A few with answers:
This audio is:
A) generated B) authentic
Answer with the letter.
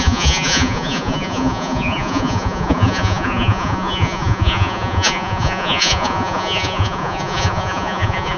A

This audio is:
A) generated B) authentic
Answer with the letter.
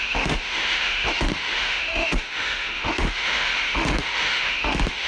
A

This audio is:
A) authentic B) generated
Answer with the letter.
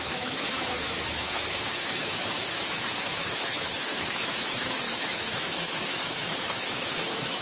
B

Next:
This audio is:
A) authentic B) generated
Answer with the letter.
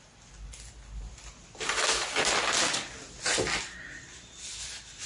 A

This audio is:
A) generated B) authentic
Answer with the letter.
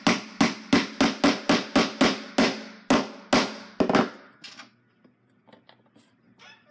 B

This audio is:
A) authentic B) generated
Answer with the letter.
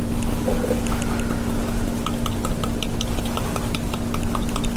A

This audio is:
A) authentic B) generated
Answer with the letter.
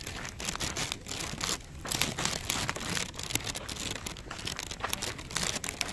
A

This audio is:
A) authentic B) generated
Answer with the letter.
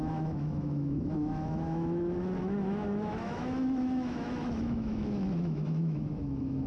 B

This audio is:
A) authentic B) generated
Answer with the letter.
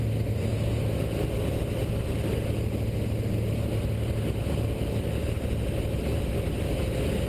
A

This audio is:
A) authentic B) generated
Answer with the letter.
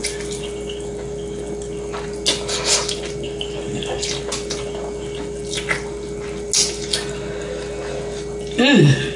A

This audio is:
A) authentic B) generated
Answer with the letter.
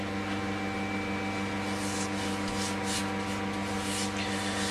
A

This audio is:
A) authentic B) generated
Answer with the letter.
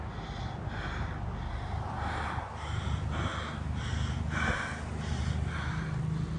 A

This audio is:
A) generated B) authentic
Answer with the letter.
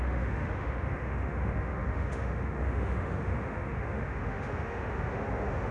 A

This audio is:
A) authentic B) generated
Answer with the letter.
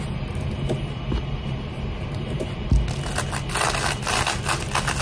A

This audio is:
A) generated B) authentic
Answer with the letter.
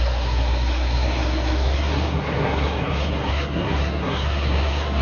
A